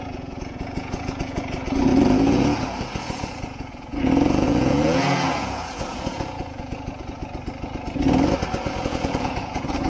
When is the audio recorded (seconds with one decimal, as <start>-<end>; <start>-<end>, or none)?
7.2-8.7